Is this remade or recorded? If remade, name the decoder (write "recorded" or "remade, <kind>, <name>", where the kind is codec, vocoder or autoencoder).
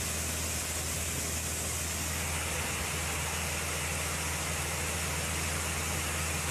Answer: recorded